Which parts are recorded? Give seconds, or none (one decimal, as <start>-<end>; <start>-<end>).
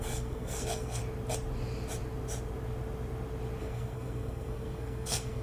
1.0-3.6